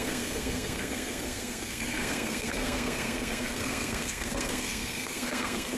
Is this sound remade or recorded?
remade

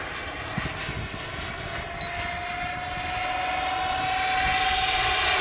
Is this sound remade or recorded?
recorded